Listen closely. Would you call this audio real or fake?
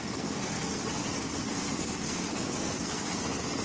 fake